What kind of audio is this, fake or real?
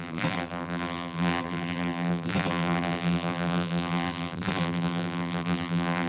fake